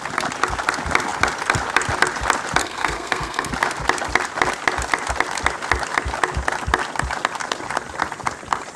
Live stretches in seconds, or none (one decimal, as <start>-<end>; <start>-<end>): 0.0-2.6; 3.5-8.8